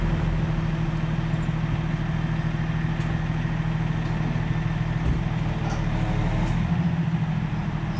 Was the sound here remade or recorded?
recorded